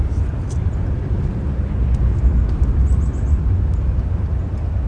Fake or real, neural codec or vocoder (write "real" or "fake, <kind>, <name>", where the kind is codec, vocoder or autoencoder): real